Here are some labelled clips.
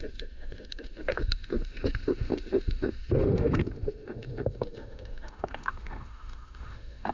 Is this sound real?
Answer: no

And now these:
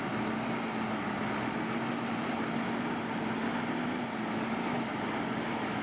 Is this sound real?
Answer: yes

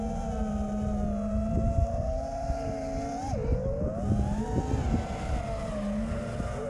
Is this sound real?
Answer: yes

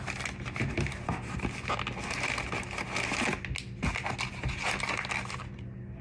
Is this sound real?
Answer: yes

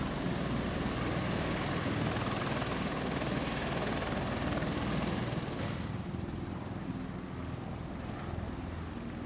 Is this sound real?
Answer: yes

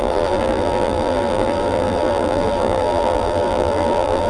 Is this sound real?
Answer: no